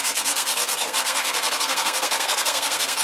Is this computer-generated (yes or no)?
yes